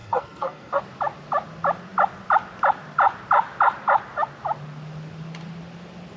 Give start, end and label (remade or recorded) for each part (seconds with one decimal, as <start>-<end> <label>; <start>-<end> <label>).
0.0-0.8 remade; 0.8-6.2 recorded